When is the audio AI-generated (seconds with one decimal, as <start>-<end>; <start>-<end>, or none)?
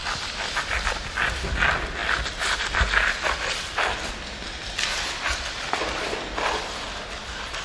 none